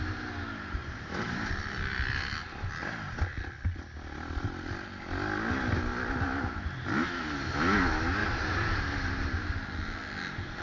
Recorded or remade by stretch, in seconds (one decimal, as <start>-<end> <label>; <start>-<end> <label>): 0.0-0.8 recorded; 0.8-1.5 remade; 1.5-8.2 recorded; 8.2-8.8 remade; 8.8-10.6 recorded